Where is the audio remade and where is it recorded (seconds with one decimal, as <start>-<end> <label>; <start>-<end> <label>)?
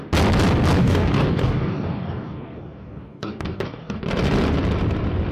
0.0-0.8 recorded; 0.8-4.0 remade; 4.0-5.3 recorded